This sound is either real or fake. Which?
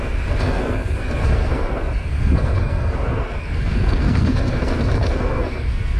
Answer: fake